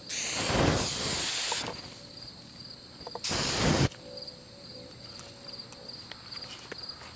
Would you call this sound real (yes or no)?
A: yes